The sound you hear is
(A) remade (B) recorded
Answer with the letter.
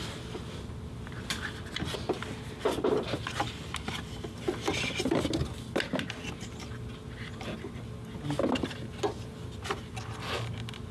B